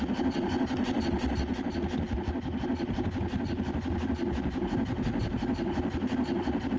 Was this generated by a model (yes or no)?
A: no